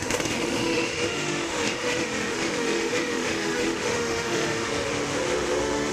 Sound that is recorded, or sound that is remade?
remade